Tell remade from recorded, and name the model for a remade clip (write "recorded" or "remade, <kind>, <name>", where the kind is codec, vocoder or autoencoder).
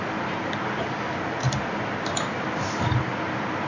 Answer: recorded